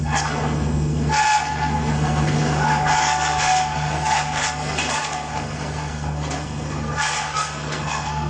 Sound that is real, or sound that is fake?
fake